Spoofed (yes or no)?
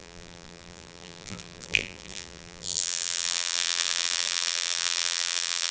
yes